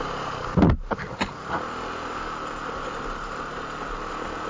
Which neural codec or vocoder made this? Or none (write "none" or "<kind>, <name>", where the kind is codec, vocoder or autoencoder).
none